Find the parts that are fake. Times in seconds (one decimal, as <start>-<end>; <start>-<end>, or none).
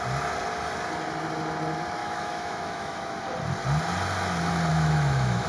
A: 2.0-3.2; 4.7-5.5